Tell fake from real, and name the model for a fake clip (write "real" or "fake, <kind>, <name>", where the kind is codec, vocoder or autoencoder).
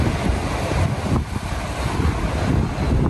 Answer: real